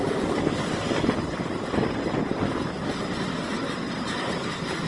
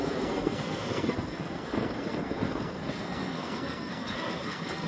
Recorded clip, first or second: first